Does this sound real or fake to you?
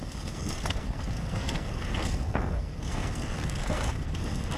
fake